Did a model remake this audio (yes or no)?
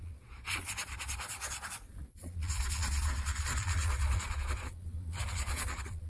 yes